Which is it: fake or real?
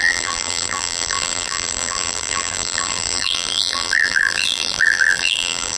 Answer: fake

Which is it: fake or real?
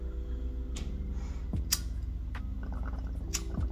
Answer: real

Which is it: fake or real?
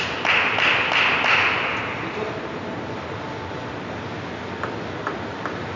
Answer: real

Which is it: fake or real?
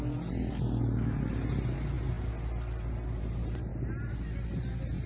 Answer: real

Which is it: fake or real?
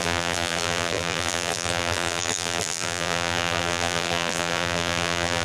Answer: fake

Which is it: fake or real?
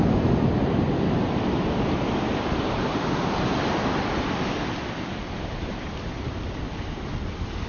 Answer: real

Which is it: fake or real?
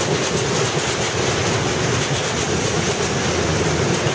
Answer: real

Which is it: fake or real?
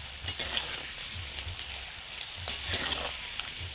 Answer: real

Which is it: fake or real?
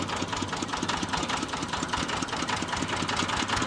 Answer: real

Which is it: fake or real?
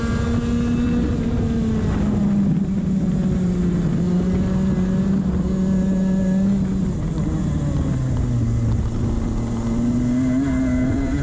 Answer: real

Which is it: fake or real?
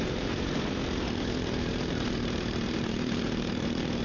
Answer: fake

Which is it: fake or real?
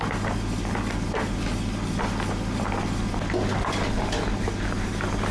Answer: real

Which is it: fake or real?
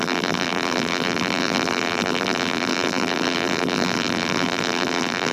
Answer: fake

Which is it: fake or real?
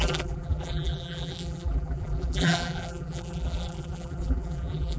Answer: fake